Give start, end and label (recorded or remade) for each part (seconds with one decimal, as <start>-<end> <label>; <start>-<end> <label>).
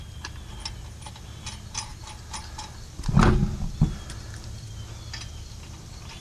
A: 0.0-6.2 recorded